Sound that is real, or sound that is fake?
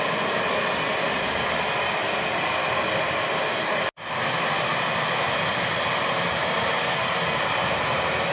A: real